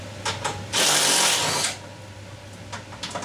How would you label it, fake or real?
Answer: real